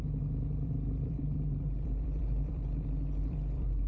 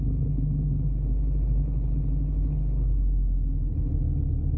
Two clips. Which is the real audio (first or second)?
second